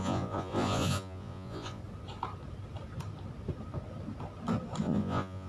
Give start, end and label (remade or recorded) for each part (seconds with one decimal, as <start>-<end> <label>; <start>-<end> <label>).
0.0-1.8 remade; 1.8-4.8 recorded; 4.8-5.5 remade